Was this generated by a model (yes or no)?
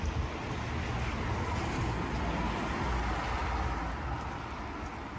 no